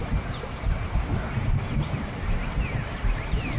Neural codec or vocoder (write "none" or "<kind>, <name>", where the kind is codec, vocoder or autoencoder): vocoder, BigVGAN v2